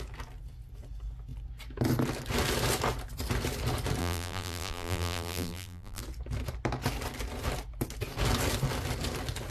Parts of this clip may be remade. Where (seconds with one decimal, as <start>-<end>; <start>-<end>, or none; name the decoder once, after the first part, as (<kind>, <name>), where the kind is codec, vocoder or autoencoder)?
4.0-6.0 (vocoder, BigVGAN v2)